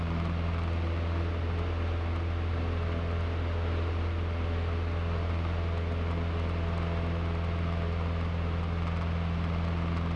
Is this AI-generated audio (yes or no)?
no